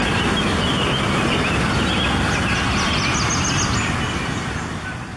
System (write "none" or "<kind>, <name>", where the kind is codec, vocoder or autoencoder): none